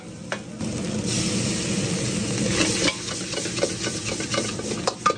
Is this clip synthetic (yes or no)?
no